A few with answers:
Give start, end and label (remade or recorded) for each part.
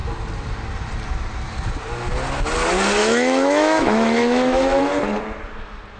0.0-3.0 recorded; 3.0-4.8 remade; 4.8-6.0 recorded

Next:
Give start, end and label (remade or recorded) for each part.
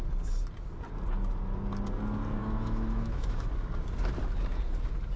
0.0-2.4 recorded; 2.4-3.5 remade; 3.5-5.2 recorded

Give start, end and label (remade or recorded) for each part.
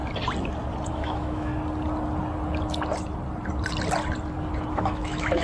0.0-0.9 recorded; 0.9-1.5 remade; 1.5-4.7 recorded; 4.7-5.4 remade